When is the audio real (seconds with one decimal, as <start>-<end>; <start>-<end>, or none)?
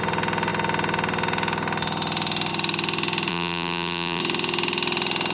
0.0-3.3; 4.2-5.3